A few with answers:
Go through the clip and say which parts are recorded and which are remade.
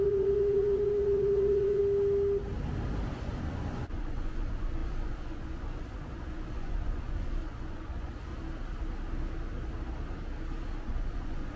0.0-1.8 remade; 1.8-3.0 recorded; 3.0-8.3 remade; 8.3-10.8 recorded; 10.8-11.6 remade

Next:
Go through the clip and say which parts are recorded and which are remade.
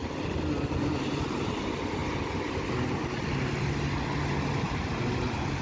0.0-1.6 recorded; 1.6-2.0 remade; 2.0-4.6 recorded; 4.6-5.6 remade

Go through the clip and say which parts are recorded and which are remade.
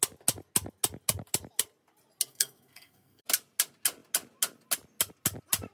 0.0-2.3 recorded; 2.3-3.2 remade; 3.2-5.7 recorded